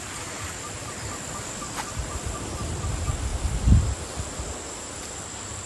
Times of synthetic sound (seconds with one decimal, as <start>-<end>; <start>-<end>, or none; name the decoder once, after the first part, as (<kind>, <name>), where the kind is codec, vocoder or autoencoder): none